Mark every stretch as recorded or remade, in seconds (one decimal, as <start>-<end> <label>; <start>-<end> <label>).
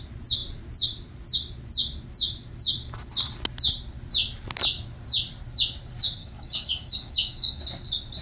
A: 0.0-6.2 recorded; 6.2-7.6 remade; 7.6-8.2 recorded